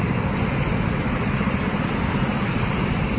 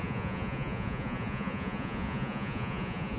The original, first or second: first